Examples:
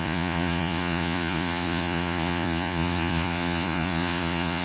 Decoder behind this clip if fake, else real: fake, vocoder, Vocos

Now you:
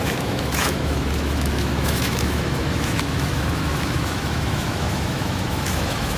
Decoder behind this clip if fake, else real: fake, autoencoder, DAC-VAE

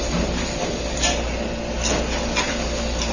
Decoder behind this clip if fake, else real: real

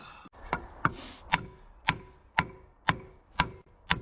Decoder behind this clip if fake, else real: real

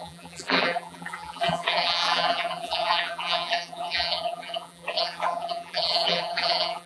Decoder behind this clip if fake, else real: fake, vocoder, BigVGAN v2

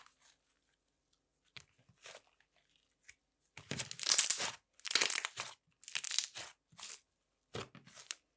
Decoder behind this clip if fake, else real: real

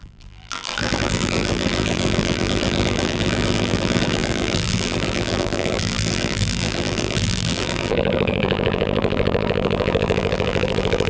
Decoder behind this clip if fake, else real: fake, vocoder, BigVGAN v2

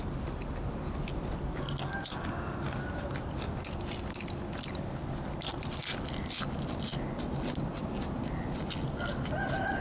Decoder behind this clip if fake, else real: real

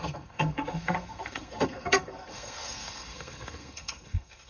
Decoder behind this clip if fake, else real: fake, codec, SNAC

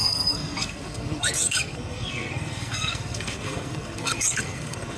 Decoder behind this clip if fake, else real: fake, codec, SNAC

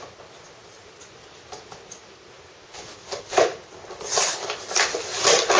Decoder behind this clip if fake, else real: real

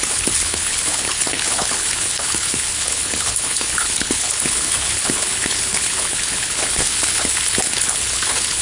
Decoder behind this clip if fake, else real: fake, codec, HILCodec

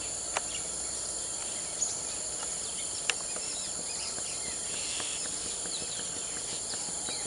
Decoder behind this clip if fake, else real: real